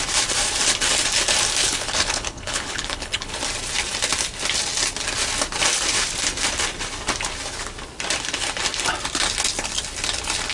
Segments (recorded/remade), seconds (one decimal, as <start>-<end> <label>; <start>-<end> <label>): 0.0-1.6 recorded; 1.6-3.4 remade; 3.4-10.5 recorded